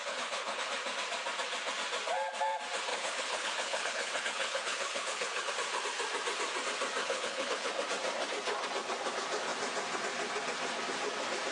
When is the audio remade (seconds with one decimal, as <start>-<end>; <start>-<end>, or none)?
0.0-0.7; 2.9-5.5; 7.0-7.7